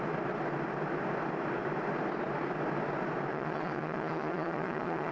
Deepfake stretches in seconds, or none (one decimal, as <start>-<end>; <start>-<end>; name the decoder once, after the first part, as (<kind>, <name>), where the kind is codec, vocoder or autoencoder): 3.3-5.1 (vocoder, Vocos)